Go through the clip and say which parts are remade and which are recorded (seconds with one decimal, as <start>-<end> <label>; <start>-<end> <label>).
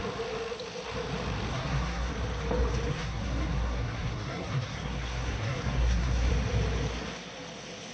0.0-1.5 recorded; 1.5-2.1 remade; 2.1-2.9 recorded; 2.9-6.3 remade; 6.3-7.9 recorded